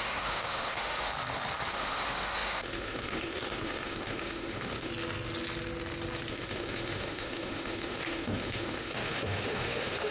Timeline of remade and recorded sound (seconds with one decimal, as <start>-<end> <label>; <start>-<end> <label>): 0.0-1.1 remade; 1.1-1.7 recorded; 1.7-4.9 remade; 4.9-6.3 recorded; 6.3-10.1 remade